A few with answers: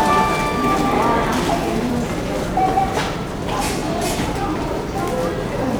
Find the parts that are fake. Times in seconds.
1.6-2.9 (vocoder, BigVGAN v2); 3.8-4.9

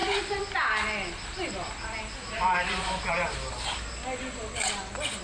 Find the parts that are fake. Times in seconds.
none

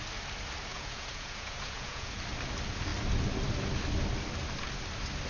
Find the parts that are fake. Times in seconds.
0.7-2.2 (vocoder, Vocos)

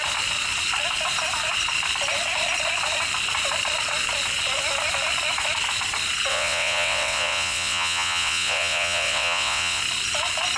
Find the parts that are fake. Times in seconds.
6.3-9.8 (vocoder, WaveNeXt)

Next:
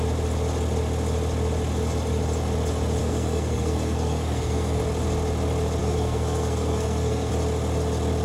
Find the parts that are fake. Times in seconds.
3.0-4.8 (codec, SNAC); 5.8-7.3

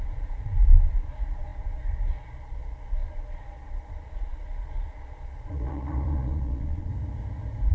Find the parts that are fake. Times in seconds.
0.0-6.9 (vocoder, Vocos)

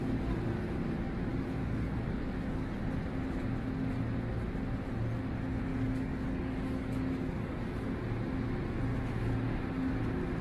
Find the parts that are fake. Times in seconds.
1.3-2.7 (codec, DAC); 5.7-7.7

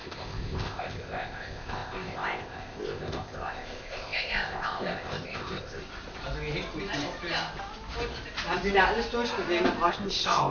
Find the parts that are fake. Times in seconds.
0.0-5.8 (codec, ZipCodec); 9.9-10.5